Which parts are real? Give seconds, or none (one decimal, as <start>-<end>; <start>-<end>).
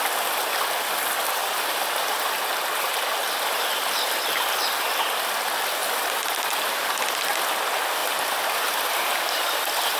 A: 0.0-1.4; 2.9-5.8; 6.9-8.0; 9.6-10.0